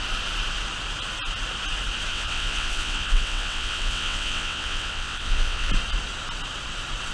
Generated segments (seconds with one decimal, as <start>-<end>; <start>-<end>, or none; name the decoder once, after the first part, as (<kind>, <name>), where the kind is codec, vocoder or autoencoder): 2.1-5.7 (vocoder, WaveNeXt)